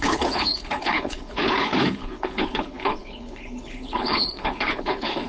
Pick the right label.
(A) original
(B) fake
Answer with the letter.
B